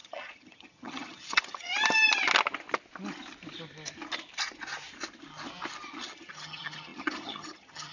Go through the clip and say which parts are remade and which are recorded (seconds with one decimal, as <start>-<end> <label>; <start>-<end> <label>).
0.0-1.7 remade; 1.7-6.0 recorded; 6.0-7.9 remade